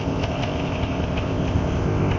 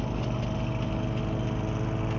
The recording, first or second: second